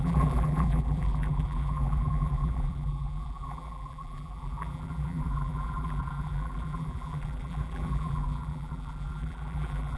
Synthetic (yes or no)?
yes